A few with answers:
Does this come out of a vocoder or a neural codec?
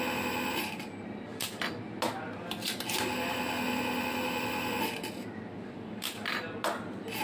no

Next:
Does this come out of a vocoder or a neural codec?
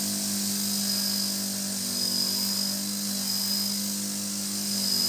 no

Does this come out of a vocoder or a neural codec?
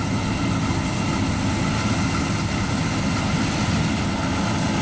no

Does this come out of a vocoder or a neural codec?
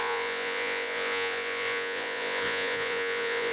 yes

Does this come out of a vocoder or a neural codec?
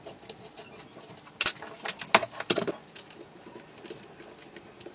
no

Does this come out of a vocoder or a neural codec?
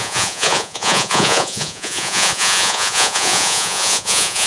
yes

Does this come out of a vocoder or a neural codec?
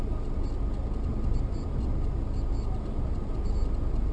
no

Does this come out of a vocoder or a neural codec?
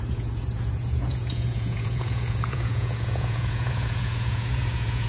yes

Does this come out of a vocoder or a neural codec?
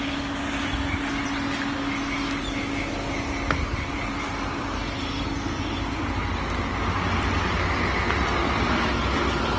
no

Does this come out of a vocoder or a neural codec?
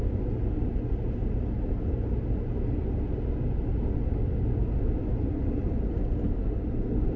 no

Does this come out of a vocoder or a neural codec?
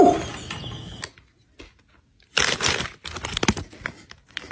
no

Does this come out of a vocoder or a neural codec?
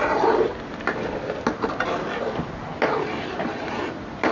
no